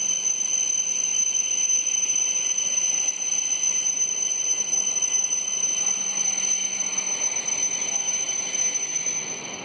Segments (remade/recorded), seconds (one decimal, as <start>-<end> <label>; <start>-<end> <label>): 0.0-3.7 recorded; 3.7-4.5 remade; 4.5-8.9 recorded; 8.9-9.6 remade